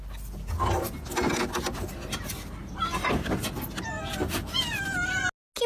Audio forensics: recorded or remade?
recorded